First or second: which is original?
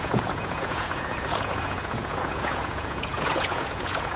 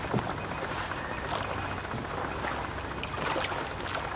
second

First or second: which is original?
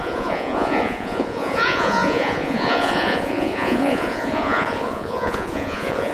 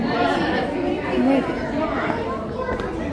second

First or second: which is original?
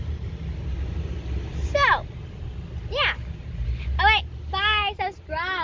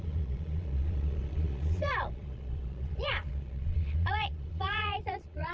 first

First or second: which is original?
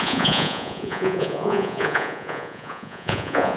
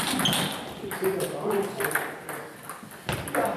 second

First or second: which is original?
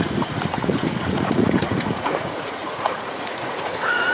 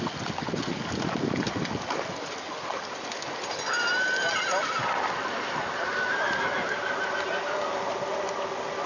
second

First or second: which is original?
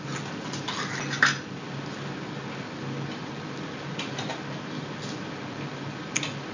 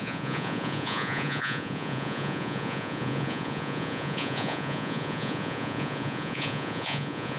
first